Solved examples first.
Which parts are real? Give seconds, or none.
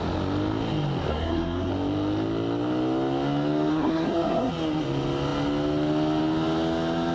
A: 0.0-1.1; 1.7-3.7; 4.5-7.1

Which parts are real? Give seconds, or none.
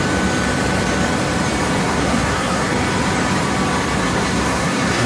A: 0.0-1.8; 2.7-4.0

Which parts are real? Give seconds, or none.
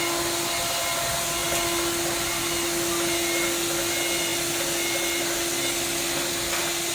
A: 0.0-6.9